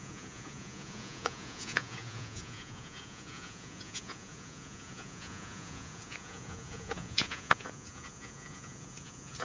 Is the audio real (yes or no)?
no